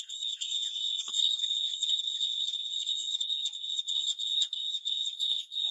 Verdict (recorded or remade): remade